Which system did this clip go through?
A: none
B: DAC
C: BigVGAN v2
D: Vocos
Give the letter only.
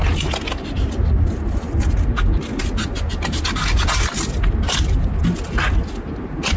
A